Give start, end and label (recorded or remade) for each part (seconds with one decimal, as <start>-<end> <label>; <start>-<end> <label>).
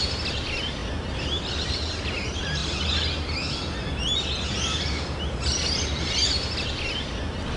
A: 0.0-7.6 recorded